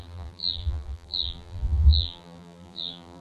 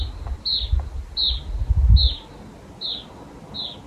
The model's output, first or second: first